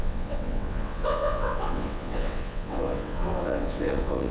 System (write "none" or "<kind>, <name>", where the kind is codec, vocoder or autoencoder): vocoder, WaveNeXt